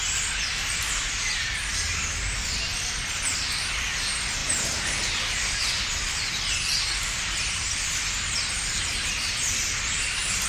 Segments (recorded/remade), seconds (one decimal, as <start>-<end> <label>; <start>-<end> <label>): 0.0-10.5 recorded